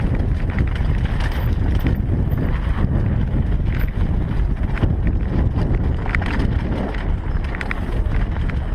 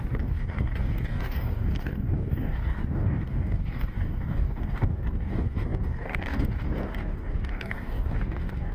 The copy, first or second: second